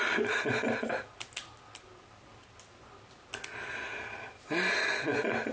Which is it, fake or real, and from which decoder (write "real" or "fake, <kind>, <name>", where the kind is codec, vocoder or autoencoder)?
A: real